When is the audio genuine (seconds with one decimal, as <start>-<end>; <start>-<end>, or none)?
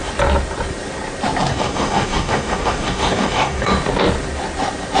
0.0-1.5; 3.7-5.0